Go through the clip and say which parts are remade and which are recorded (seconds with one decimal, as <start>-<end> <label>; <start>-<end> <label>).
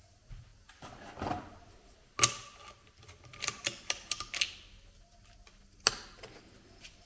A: 0.0-7.1 recorded